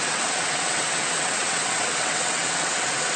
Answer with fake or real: fake